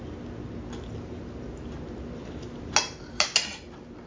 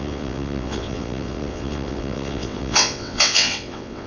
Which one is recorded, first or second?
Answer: first